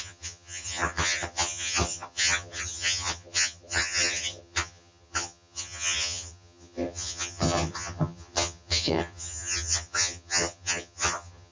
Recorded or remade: remade